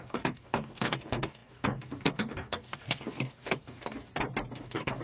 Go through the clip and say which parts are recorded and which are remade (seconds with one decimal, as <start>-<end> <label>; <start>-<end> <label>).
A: 0.0-4.1 remade; 4.1-4.6 recorded; 4.6-5.0 remade